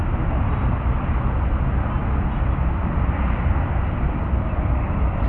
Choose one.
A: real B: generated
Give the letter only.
A